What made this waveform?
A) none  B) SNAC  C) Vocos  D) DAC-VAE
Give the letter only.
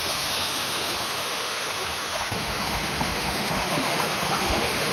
D